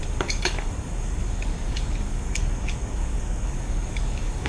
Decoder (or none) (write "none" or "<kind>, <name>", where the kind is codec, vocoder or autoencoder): codec, DAC